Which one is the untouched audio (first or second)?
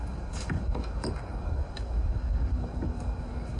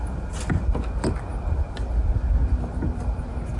second